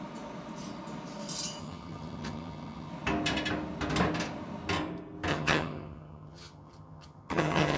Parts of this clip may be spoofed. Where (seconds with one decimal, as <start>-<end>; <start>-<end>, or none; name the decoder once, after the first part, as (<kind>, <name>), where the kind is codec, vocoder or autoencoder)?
1.6-2.9 (vocoder, HiFi-GAN); 5.3-7.8